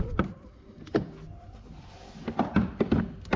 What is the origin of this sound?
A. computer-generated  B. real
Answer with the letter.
B